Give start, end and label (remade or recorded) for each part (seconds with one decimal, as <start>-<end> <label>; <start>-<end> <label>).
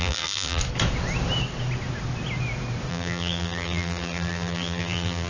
0.0-0.6 remade; 0.6-2.9 recorded; 2.9-5.3 remade